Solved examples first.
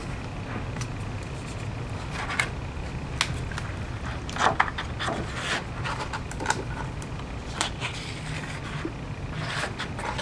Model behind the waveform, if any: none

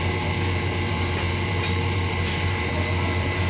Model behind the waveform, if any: vocoder, BigVGAN v2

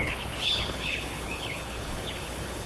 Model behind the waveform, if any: codec, HILCodec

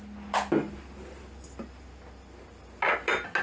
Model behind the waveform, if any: none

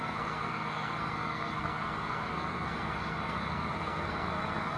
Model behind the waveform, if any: codec, SNAC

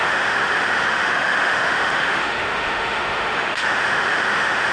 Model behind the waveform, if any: autoencoder, DAC-VAE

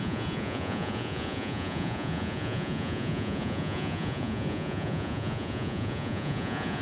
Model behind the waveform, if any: vocoder, Vocos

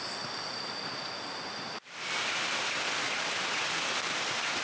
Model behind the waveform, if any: vocoder, BigVGAN v2